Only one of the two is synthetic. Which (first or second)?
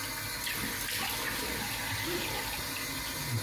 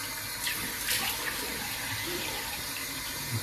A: second